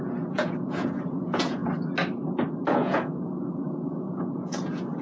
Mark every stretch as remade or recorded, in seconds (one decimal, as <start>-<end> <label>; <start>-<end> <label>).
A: 0.0-1.6 remade; 1.6-2.7 recorded; 2.7-5.0 remade